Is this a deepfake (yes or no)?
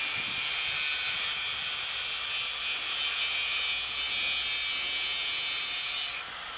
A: no